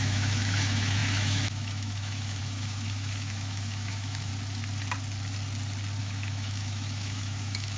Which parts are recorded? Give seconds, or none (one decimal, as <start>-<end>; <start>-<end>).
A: 4.3-6.0